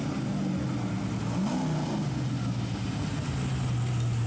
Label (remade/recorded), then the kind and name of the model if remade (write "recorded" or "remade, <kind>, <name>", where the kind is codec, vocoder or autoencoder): recorded